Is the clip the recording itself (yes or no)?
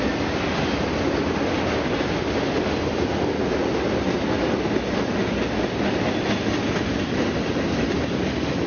yes